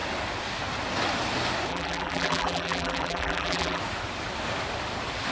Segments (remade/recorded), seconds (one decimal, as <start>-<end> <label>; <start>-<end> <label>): 0.0-1.7 recorded; 1.7-3.8 remade; 3.8-5.3 recorded